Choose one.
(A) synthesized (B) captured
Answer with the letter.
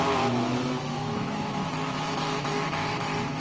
A